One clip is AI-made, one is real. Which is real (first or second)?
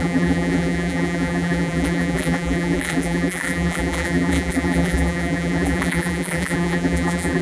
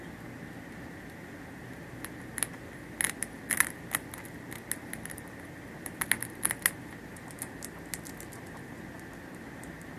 second